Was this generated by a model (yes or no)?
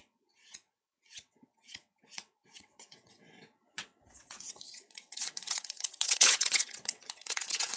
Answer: yes